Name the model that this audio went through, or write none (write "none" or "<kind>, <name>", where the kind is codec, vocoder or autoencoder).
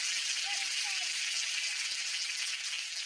none